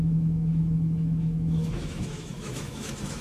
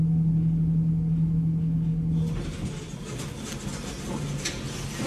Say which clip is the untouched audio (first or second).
second